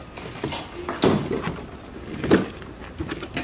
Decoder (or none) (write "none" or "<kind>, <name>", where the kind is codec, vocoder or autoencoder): none